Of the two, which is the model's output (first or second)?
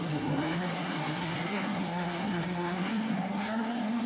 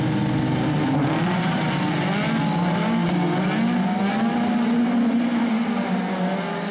first